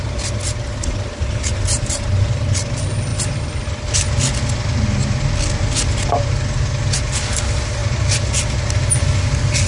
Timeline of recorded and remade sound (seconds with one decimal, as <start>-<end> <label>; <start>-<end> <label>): 0.0-9.7 recorded